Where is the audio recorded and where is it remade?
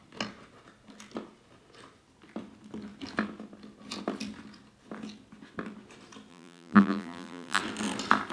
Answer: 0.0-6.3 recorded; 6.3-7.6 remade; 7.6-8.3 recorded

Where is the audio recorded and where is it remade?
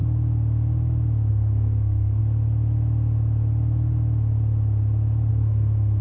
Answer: 0.0-1.3 recorded; 1.3-2.2 remade; 2.2-5.3 recorded; 5.3-6.0 remade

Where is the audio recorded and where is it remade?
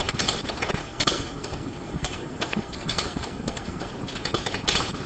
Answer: 0.0-0.8 recorded; 0.8-3.9 remade; 3.9-5.1 recorded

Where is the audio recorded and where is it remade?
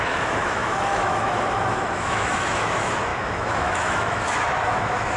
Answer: 0.0-5.2 remade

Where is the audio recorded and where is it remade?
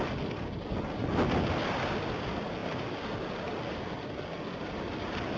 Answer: 0.0-5.4 recorded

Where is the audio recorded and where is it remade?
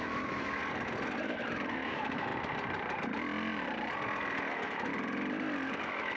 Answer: 0.0-0.6 remade; 0.6-1.5 recorded; 1.5-2.3 remade; 2.3-4.5 recorded; 4.5-4.9 remade; 4.9-5.8 recorded; 5.8-6.2 remade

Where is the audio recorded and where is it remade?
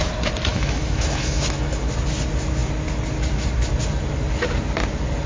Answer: 0.0-0.5 recorded; 0.5-1.8 remade; 1.8-5.3 recorded